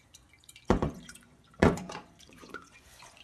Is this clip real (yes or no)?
no